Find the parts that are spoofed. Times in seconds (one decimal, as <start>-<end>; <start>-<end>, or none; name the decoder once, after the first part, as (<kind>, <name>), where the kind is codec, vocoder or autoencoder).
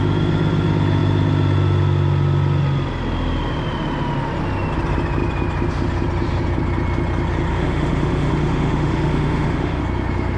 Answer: 7.5-9.8 (autoencoder, DAC-VAE)